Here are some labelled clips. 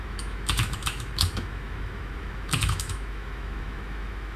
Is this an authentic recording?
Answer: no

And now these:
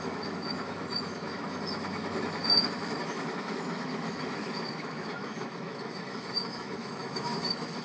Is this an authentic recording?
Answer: no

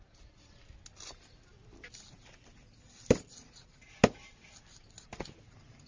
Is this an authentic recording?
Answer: yes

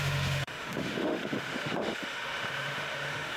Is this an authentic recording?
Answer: no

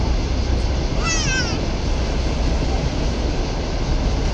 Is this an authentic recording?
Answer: yes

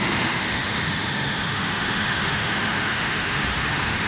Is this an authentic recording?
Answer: no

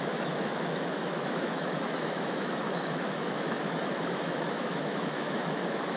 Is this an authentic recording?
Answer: no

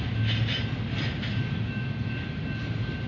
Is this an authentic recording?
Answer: yes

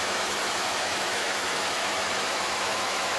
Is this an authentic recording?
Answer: no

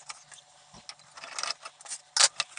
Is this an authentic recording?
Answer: yes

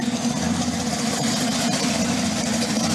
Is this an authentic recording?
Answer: yes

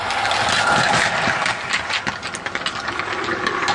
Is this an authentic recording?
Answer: yes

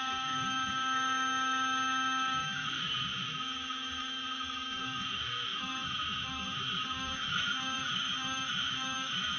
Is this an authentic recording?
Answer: no